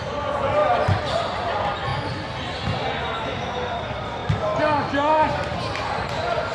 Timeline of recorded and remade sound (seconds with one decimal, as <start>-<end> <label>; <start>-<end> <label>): 0.0-0.6 recorded; 0.6-1.2 remade; 1.2-4.2 recorded; 4.2-5.5 remade; 5.5-6.5 recorded